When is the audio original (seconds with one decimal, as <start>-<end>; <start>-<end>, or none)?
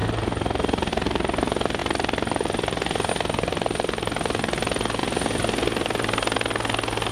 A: 0.9-1.8; 3.1-5.0; 6.5-7.1